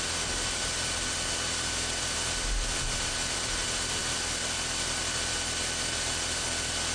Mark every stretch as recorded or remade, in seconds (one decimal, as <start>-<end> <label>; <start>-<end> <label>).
0.0-6.9 recorded

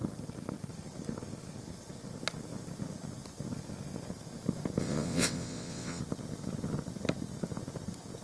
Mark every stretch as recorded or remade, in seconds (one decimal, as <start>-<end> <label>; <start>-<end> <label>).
0.0-4.8 recorded; 4.8-6.0 remade; 6.0-8.2 recorded

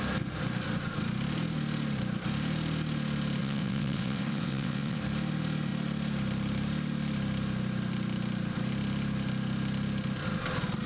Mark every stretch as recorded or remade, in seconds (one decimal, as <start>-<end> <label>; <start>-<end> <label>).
0.0-3.4 recorded; 3.4-5.0 remade; 5.0-10.9 recorded

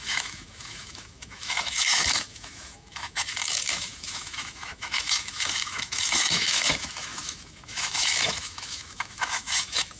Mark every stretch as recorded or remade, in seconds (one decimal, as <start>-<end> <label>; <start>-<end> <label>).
0.0-10.0 remade

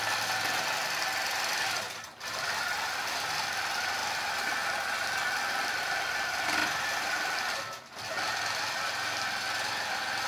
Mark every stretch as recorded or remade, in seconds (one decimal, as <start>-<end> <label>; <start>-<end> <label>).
0.0-10.3 recorded

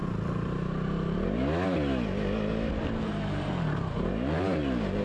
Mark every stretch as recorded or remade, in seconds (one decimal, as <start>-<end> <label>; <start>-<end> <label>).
0.0-3.0 recorded; 3.0-5.0 remade